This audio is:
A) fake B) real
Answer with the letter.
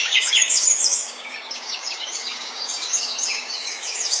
A